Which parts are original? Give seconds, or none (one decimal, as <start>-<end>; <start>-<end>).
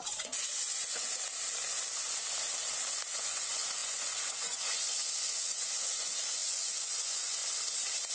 1.1-3.1; 7.4-8.1